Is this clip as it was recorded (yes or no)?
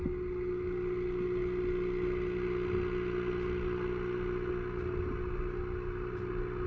yes